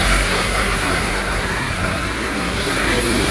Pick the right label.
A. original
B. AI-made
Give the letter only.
B